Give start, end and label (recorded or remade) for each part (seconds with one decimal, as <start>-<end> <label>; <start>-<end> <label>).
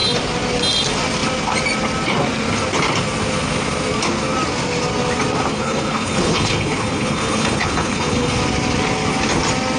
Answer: 0.0-5.5 recorded; 5.5-8.4 remade; 8.4-9.8 recorded